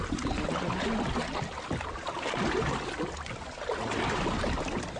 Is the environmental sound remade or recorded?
recorded